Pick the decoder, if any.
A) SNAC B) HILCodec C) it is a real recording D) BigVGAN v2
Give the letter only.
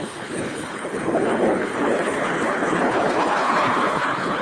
B